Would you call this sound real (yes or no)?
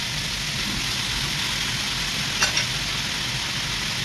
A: yes